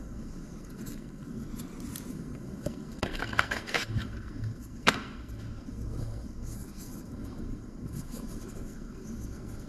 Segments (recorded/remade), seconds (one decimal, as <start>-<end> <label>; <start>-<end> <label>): 0.0-1.5 remade; 1.5-2.1 recorded; 2.1-9.7 remade